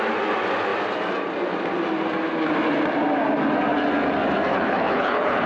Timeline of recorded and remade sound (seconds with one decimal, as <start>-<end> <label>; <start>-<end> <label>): 0.0-4.5 recorded; 4.5-5.5 remade